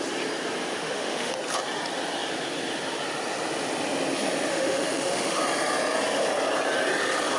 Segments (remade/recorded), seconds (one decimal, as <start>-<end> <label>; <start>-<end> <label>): 0.0-0.7 recorded; 0.7-1.3 remade; 1.3-4.5 recorded; 4.5-5.4 remade; 5.4-7.4 recorded